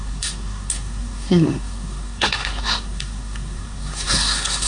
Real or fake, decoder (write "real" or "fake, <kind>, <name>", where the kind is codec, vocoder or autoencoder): fake, codec, SNAC